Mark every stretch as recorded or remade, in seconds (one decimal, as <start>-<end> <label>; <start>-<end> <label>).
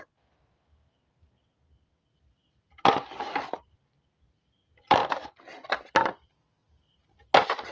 0.0-7.7 recorded